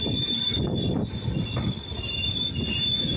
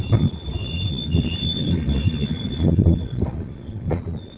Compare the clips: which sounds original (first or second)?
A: first